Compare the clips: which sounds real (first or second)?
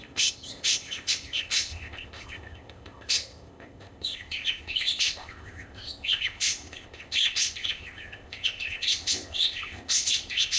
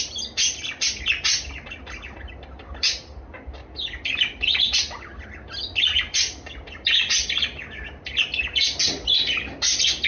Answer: second